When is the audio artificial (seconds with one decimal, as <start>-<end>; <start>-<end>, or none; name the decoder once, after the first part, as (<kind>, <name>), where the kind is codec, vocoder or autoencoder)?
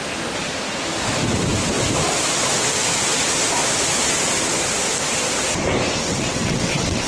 6.0-7.1 (vocoder, WaveNeXt)